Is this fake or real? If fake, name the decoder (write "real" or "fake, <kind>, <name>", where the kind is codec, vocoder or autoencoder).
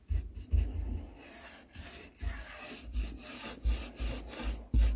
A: real